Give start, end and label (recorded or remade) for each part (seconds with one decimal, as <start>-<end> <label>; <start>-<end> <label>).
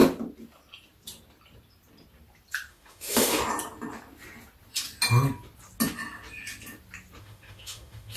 0.0-2.7 recorded; 2.7-3.4 remade; 3.4-7.2 recorded; 7.2-8.2 remade